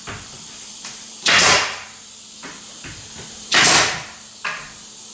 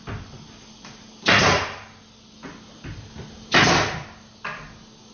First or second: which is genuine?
second